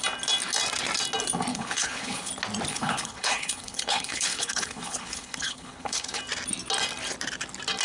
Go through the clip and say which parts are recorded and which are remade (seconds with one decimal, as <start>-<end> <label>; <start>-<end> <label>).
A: 0.0-1.5 recorded; 1.5-2.3 remade; 2.3-2.7 recorded; 2.7-6.2 remade; 6.2-7.8 recorded